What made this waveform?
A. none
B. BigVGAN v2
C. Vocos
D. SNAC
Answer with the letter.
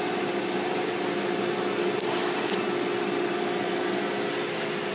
A